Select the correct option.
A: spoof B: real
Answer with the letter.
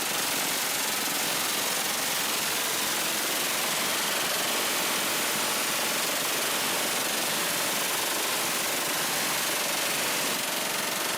B